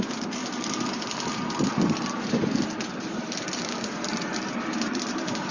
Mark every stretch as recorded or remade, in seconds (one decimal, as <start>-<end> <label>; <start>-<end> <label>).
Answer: 0.0-0.4 remade; 0.4-2.8 recorded; 2.8-5.5 remade